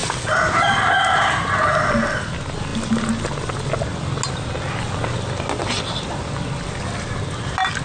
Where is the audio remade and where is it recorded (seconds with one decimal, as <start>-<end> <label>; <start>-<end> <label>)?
0.0-7.8 recorded